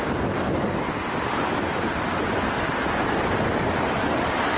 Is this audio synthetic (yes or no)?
no